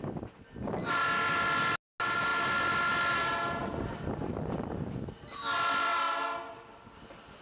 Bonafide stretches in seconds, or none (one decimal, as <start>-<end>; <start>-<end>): 0.0-7.4